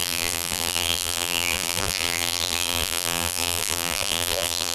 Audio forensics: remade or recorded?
remade